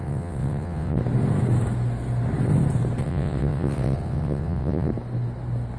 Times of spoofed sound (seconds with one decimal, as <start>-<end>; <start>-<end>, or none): 0.0-1.0; 3.0-4.9